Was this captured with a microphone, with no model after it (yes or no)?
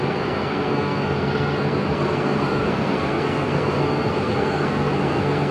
no